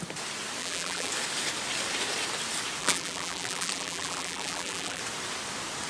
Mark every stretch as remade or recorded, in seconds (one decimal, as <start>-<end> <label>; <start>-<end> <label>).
0.0-0.6 recorded; 0.6-1.1 remade; 1.1-2.8 recorded; 2.8-5.0 remade; 5.0-5.9 recorded